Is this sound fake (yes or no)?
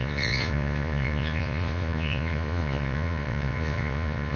yes